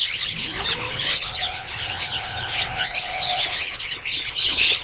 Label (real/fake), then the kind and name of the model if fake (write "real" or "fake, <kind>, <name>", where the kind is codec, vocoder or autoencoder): fake, codec, HILCodec